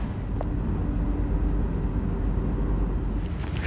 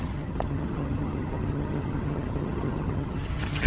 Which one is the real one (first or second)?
first